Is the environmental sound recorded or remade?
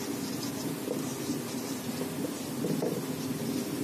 recorded